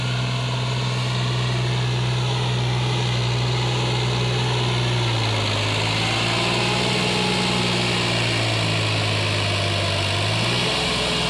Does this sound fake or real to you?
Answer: real